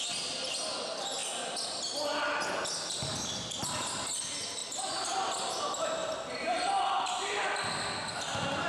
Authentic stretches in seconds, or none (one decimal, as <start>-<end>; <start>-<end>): 0.0-1.2; 1.9-6.0; 6.8-8.7